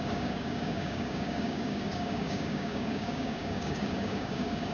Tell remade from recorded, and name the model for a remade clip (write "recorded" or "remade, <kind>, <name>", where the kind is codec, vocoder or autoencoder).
remade, codec, DAC